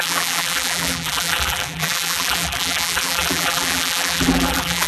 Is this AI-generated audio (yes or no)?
yes